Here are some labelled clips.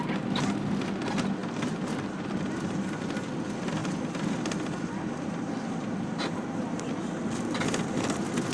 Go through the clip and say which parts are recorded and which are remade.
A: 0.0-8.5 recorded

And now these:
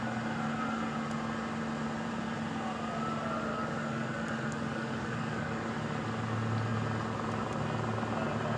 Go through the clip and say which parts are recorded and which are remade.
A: 0.0-3.5 recorded; 3.5-5.7 remade; 5.7-8.6 recorded

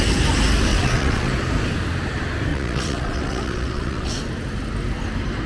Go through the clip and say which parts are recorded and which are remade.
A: 0.0-0.7 recorded; 0.7-1.3 remade; 1.3-2.5 recorded; 2.5-4.2 remade; 4.2-5.5 recorded